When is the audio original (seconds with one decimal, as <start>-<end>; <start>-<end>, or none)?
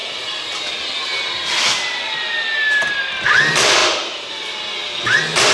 0.0-3.8; 4.3-5.5